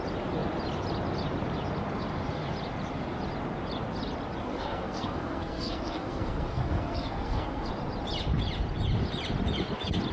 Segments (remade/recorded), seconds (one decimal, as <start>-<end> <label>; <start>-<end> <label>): 0.0-4.4 recorded; 4.4-7.7 remade; 7.7-10.1 recorded